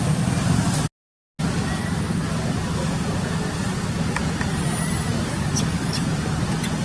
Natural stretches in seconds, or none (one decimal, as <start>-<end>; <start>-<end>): 0.0-5.3; 6.1-6.8